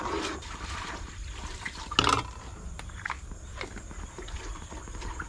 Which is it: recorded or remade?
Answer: recorded